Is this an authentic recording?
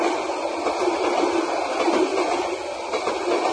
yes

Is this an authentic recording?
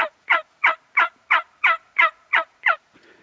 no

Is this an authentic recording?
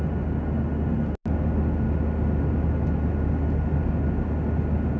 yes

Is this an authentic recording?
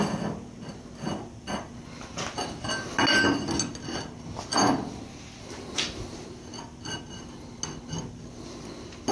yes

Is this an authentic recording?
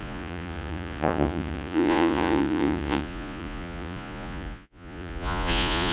no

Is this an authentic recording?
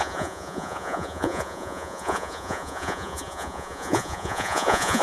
no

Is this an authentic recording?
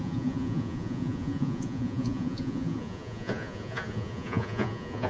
no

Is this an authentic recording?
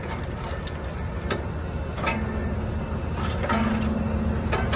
yes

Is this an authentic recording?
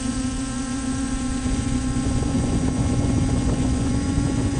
no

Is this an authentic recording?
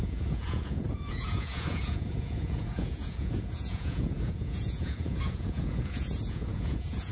no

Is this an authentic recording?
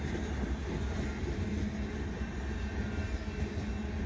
yes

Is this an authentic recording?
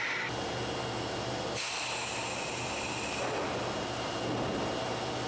yes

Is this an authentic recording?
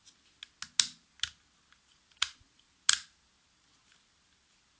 yes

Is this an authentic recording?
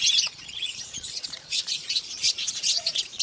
no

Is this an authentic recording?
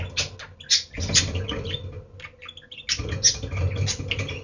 yes